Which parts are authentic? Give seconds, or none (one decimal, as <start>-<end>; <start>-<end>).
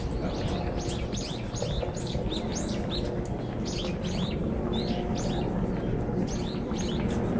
0.0-7.4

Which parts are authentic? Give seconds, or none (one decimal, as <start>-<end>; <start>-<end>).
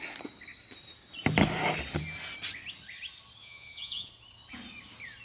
0.0-3.4; 4.1-5.2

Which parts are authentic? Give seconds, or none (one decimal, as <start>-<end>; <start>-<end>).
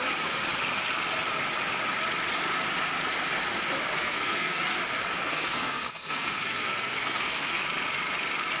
0.0-3.9; 4.6-5.3; 7.6-8.6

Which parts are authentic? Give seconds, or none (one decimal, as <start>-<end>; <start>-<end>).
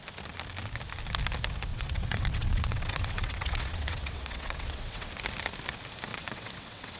0.0-1.7; 5.1-6.1